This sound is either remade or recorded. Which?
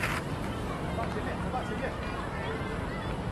recorded